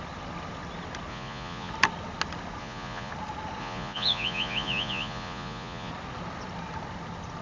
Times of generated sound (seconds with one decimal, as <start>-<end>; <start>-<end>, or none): 1.1-1.7; 2.6-3.1; 3.6-5.9